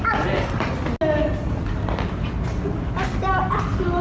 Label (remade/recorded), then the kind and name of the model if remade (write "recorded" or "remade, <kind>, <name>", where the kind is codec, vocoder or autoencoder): recorded